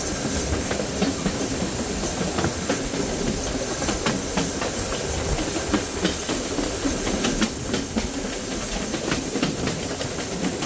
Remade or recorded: recorded